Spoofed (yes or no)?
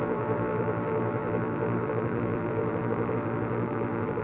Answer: yes